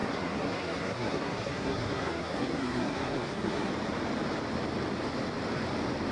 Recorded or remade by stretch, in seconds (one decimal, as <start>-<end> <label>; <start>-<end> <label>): 0.0-3.7 remade; 3.7-6.1 recorded